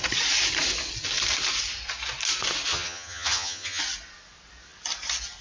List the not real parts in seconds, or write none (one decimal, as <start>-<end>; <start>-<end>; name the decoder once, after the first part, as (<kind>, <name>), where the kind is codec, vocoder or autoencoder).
2.7-3.8 (vocoder, HiFi-GAN)

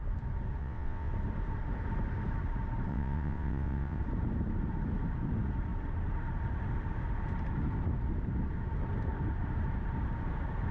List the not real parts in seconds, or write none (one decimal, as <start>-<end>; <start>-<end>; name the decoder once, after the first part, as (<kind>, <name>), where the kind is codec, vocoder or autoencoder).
0.6-1.1 (vocoder, WaveNeXt); 2.9-4.0